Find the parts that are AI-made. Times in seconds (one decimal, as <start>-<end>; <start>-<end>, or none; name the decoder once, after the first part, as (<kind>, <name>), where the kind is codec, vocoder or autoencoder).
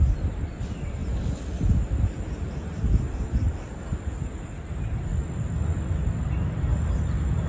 0.0-1.0 (vocoder, BigVGAN v2); 2.9-5.1; 6.2-7.5